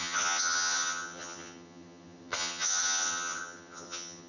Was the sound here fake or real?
fake